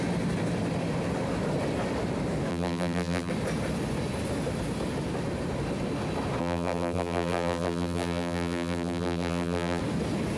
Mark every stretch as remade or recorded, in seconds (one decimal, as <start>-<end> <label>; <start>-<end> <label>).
0.0-2.5 recorded; 2.5-3.3 remade; 3.3-6.4 recorded; 6.4-9.8 remade; 9.8-10.4 recorded